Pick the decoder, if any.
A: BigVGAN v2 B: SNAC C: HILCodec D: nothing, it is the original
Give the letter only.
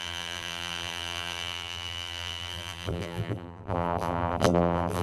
A